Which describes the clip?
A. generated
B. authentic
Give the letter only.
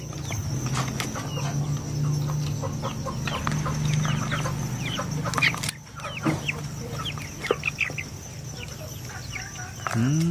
B